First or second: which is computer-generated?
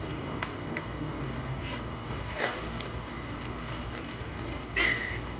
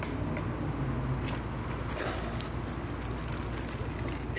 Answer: first